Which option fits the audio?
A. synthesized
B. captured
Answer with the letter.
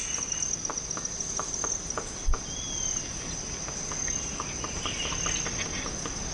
B